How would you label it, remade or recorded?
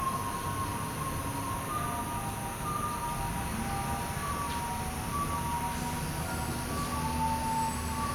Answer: recorded